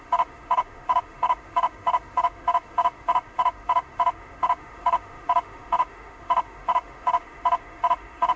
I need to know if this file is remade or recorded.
remade